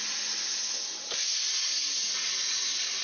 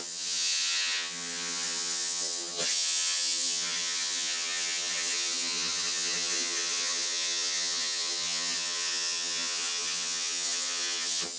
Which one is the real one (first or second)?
first